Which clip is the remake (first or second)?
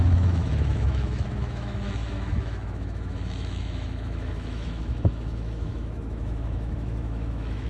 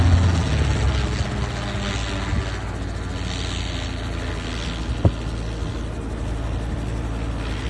first